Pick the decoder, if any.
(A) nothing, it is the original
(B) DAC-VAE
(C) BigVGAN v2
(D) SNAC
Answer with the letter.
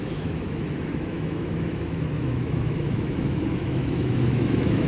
B